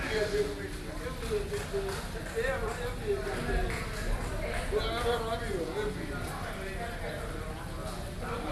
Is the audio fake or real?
real